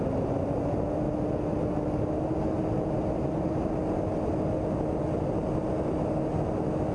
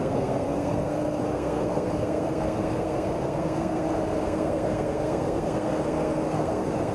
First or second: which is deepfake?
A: second